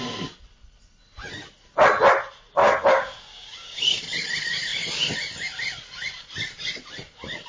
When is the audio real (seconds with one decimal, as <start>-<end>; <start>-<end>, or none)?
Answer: 0.0-2.6; 3.8-7.5